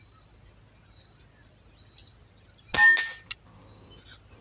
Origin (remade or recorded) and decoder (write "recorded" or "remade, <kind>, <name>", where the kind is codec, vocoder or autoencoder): recorded